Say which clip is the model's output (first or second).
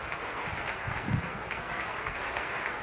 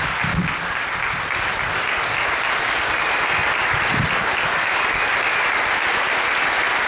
first